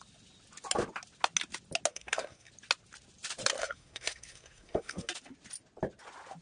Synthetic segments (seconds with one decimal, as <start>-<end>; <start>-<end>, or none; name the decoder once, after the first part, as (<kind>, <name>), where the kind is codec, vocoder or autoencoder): 1.9-2.5 (codec, SNAC); 3.6-5.1